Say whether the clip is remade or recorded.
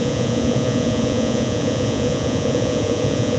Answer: remade